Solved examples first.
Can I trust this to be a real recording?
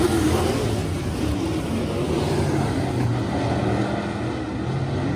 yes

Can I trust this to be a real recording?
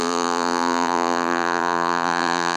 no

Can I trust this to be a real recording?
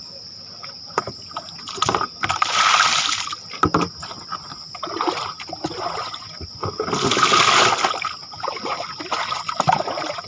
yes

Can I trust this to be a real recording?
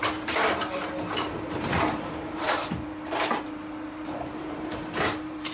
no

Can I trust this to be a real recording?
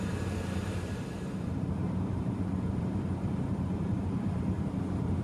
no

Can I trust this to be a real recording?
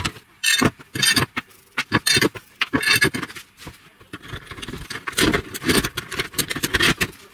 no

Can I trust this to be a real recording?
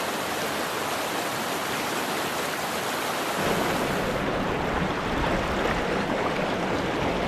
yes